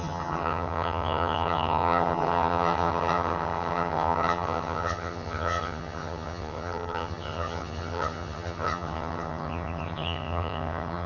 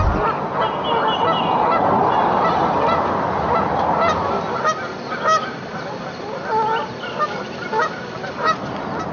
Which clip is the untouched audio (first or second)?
second